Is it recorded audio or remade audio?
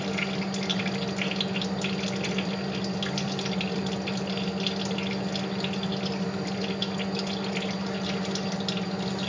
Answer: recorded